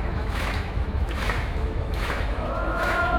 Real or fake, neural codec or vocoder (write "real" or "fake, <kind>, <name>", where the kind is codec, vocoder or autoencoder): fake, autoencoder, DAC-VAE